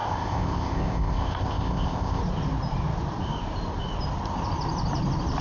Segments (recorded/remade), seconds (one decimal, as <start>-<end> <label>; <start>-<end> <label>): 0.0-2.2 remade; 2.2-5.4 recorded